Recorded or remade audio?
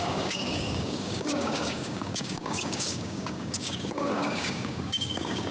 remade